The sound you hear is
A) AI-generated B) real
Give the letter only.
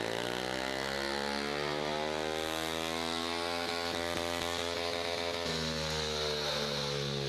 B